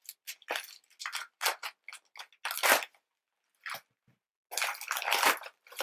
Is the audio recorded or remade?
recorded